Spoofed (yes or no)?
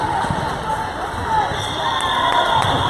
no